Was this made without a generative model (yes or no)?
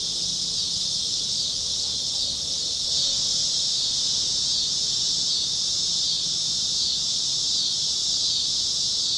yes